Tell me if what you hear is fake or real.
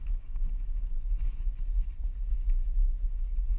real